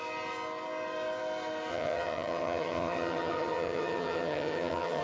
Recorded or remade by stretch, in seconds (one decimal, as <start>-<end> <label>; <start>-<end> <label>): 0.0-1.7 recorded; 1.7-5.0 remade